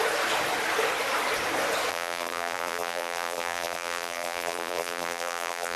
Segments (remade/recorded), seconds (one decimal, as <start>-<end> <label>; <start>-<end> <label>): 0.0-1.9 recorded; 1.9-5.8 remade